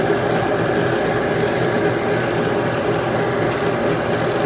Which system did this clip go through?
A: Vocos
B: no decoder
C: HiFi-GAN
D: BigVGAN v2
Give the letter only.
B